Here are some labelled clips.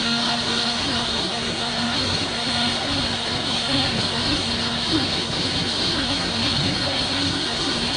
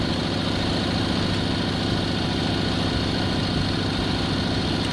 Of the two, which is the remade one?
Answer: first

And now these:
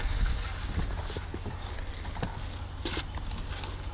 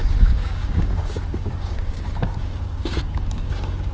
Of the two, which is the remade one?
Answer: second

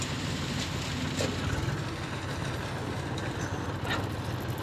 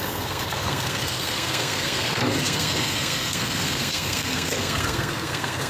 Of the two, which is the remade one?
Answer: second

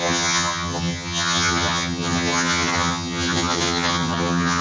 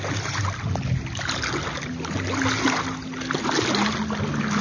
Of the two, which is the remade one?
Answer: first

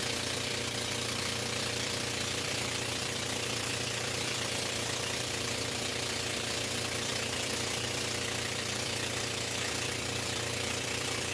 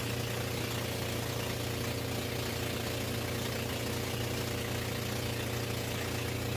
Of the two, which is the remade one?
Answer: first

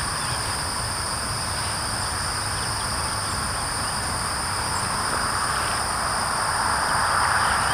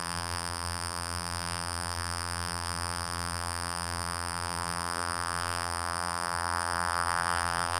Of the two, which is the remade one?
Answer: second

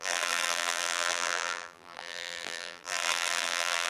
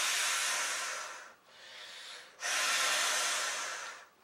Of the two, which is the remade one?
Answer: first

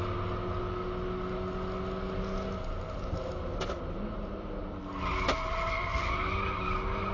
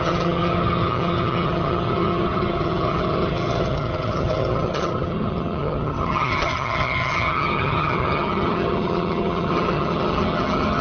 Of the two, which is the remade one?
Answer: second